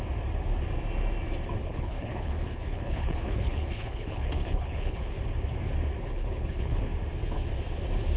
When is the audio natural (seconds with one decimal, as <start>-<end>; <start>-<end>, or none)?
0.0-1.6; 5.2-6.0; 6.8-8.2